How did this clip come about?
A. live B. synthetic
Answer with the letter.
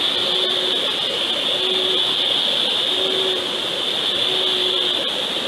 A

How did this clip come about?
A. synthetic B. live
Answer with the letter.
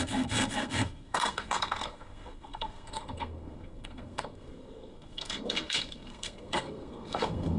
A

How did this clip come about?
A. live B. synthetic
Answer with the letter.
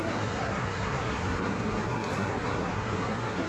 B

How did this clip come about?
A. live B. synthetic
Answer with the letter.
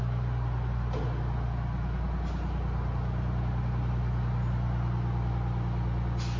A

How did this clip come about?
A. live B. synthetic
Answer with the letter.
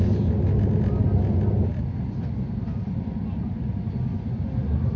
A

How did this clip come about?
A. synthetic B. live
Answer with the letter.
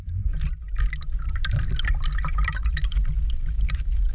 B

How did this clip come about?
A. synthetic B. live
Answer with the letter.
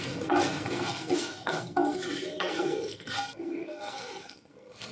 A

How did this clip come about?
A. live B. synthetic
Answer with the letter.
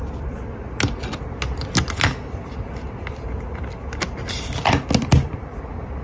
A